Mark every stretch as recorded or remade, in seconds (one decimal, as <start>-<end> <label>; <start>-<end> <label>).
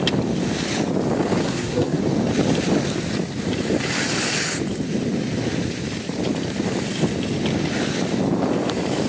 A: 0.0-1.4 recorded; 1.4-2.0 remade; 2.0-9.1 recorded